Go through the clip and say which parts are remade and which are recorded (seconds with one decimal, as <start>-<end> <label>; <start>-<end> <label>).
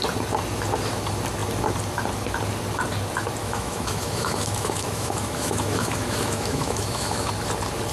0.0-3.4 recorded; 3.4-7.3 remade; 7.3-7.9 recorded